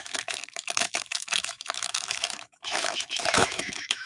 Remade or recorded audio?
remade